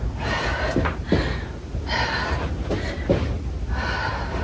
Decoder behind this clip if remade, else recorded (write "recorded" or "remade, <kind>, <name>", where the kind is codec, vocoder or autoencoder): recorded